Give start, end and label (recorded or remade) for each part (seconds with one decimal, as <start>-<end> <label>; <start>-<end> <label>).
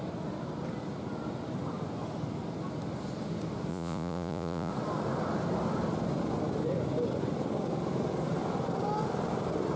0.0-3.7 recorded; 3.7-4.7 remade; 4.7-9.8 recorded